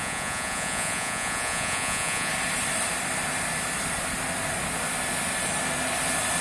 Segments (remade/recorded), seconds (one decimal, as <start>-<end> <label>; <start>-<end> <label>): 0.0-2.3 remade; 2.3-6.4 recorded